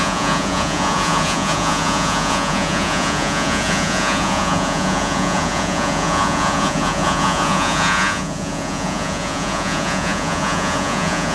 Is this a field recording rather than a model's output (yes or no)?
no